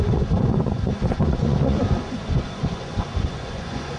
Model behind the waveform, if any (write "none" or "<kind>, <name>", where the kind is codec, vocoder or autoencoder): vocoder, Vocos